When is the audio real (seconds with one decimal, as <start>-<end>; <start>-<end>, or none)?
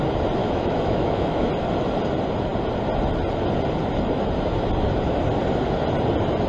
0.0-0.4; 1.5-6.5